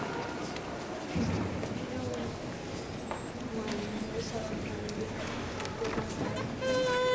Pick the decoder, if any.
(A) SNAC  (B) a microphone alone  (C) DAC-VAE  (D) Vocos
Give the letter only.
B